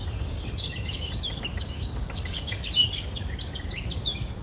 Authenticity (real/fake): fake